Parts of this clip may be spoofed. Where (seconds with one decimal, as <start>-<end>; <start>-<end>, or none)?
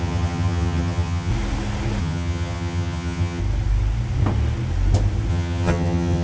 0.0-1.3; 2.0-3.4; 5.3-6.2